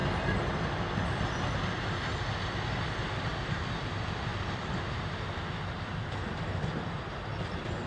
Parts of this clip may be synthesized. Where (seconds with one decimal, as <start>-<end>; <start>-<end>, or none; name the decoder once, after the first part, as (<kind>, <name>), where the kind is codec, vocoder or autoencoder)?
1.6-4.3 (vocoder, BigVGAN v2); 5.2-7.9